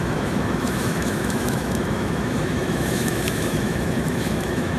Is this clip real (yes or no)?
no